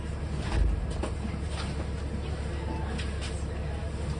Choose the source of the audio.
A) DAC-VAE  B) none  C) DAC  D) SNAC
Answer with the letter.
B